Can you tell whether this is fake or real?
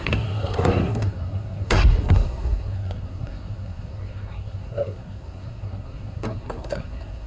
fake